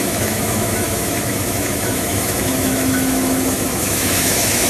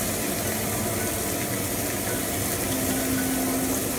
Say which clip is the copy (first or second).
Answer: first